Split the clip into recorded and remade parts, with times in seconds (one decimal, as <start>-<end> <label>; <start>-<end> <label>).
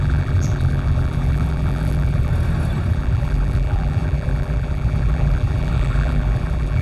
0.0-2.3 remade; 2.3-2.9 recorded; 2.9-6.8 remade